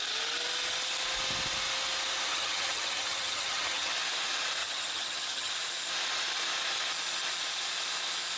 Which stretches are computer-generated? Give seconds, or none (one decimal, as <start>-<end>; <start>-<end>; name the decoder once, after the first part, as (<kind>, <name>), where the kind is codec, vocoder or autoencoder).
2.3-3.9 (vocoder, HiFi-GAN); 4.6-5.5